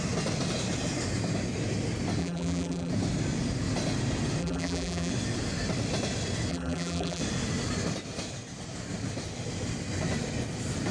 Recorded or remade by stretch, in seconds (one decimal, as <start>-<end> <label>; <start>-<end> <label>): 0.0-2.2 recorded; 2.2-2.9 remade; 2.9-4.4 recorded; 4.4-5.1 remade; 5.1-6.5 recorded; 6.5-7.2 remade; 7.2-10.9 recorded